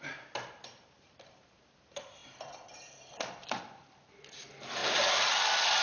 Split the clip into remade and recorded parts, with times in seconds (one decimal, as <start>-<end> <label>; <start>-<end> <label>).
0.0-4.8 remade; 4.8-5.8 recorded